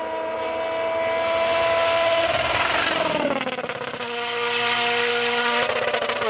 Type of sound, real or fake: real